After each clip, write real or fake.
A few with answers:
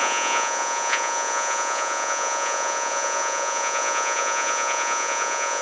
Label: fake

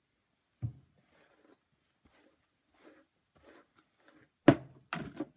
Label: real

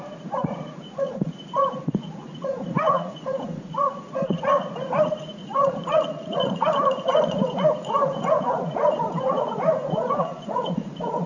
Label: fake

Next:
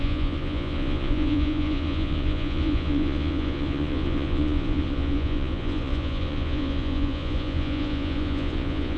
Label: fake